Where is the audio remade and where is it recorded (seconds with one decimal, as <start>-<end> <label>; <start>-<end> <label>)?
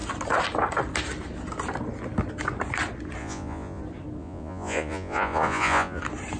0.0-3.2 recorded; 3.2-3.8 remade; 3.8-4.2 recorded; 4.2-6.0 remade; 6.0-6.4 recorded